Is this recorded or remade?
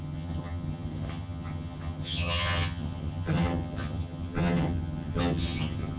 remade